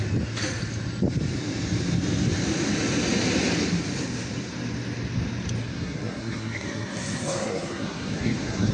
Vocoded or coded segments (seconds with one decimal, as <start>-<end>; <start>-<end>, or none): 5.6-8.7